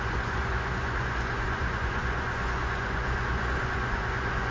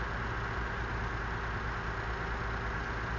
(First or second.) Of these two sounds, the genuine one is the second